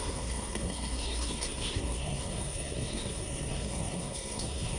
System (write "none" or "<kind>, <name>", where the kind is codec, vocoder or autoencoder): codec, SNAC